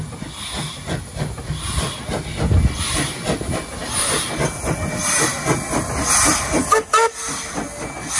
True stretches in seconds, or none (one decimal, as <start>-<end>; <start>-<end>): 0.0-8.2